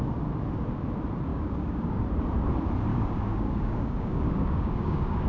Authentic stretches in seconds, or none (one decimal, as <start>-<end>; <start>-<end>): 0.0-1.3; 2.0-2.9